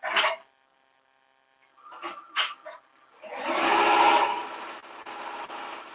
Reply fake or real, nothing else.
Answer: real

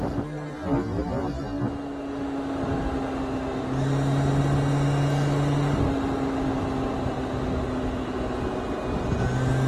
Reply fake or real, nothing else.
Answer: real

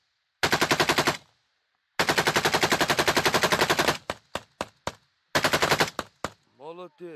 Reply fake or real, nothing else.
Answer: real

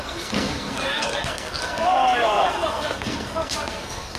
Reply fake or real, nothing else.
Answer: fake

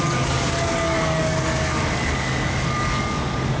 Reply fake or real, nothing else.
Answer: fake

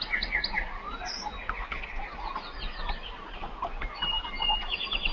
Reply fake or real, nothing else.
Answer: real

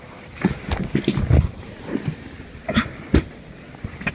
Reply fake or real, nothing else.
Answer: real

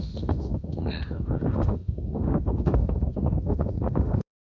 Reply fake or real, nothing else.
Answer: fake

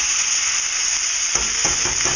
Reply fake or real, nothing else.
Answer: real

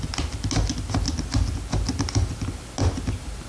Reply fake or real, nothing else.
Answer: real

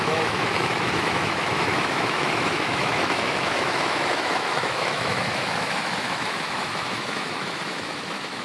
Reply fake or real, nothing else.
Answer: fake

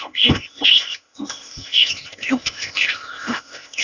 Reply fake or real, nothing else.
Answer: fake